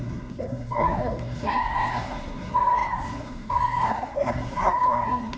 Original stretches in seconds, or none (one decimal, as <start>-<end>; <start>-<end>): none